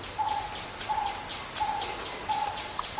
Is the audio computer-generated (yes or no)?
no